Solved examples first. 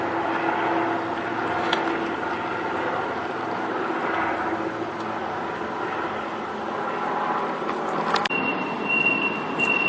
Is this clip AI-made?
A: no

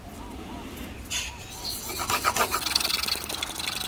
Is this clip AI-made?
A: no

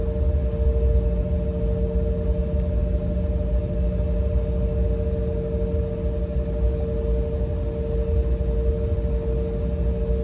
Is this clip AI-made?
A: no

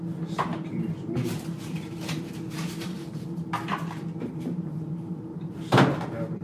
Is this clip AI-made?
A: yes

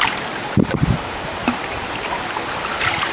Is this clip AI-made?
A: yes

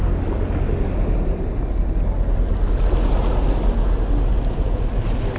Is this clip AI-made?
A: no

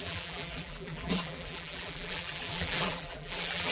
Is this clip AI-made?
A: yes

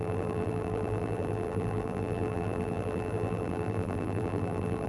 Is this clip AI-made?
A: yes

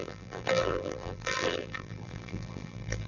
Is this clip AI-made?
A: yes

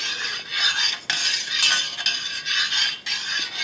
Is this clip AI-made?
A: no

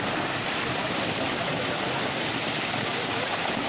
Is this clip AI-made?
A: no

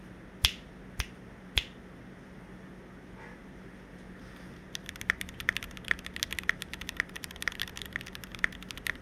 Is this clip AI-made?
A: no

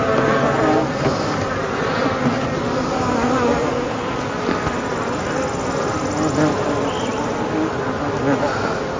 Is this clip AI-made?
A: no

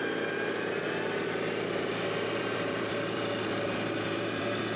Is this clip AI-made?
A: yes